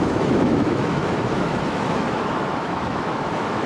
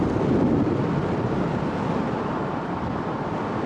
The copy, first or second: first